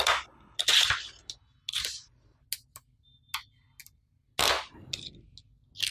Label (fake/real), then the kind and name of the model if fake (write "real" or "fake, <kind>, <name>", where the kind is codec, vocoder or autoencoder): real